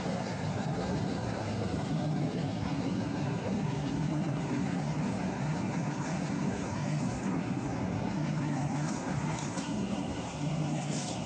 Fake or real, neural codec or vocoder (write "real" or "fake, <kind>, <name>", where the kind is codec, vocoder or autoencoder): fake, codec, SNAC